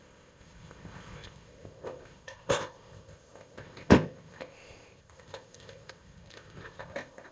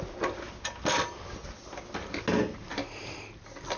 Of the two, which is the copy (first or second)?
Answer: first